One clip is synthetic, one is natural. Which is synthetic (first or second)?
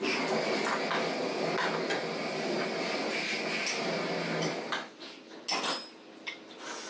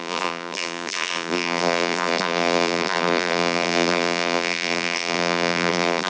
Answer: second